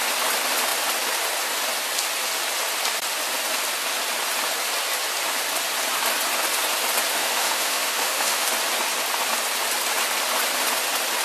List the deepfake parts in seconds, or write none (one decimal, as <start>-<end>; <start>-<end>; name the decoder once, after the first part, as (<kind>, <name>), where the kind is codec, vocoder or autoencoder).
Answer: 7.1-8.5 (autoencoder, DAC-VAE)